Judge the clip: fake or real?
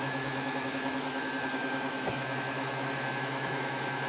fake